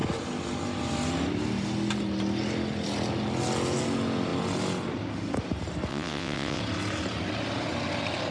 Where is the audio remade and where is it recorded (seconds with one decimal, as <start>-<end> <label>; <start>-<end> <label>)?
0.0-5.9 recorded; 5.9-6.6 remade; 6.6-8.3 recorded